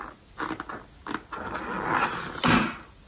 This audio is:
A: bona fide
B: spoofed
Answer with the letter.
A